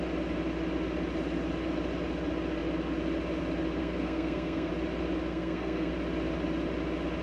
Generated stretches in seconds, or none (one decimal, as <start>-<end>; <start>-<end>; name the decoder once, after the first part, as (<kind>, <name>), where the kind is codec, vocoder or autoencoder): 3.8-4.7 (codec, SNAC); 5.3-5.9

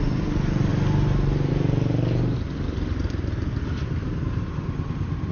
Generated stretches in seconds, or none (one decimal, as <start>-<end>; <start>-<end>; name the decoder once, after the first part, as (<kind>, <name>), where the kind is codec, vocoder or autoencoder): none

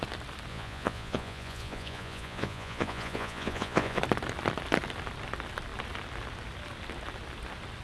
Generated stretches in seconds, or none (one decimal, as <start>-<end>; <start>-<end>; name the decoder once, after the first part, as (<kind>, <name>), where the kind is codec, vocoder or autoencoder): 0.5-4.0 (vocoder, Vocos)

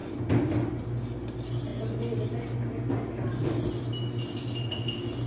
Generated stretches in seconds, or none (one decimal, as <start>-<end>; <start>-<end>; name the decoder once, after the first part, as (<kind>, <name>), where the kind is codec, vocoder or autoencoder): none

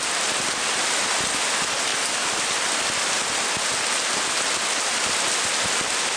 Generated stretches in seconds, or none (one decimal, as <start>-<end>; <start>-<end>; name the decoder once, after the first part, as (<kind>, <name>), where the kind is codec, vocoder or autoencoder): none

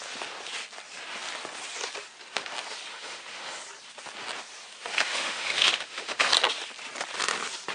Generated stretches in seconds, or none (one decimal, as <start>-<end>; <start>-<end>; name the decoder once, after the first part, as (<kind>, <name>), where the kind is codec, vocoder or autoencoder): 2.9-3.6 (autoencoder, DAC-VAE); 4.9-6.3